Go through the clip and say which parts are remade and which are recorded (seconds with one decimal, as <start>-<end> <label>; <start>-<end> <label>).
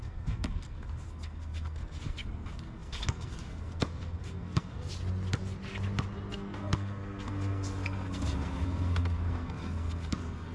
0.0-4.9 remade; 4.9-6.3 recorded; 6.3-10.5 remade